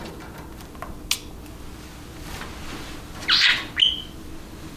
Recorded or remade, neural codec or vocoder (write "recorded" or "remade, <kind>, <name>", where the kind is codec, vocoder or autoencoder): recorded